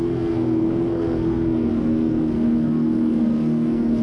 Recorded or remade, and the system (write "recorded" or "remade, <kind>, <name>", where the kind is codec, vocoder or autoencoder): remade, codec, SNAC